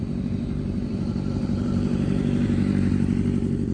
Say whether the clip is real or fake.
fake